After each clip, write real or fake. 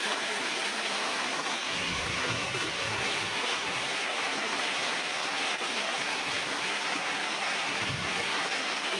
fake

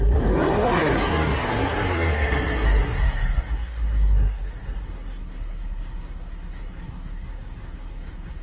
fake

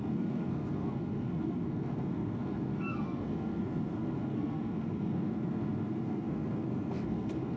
fake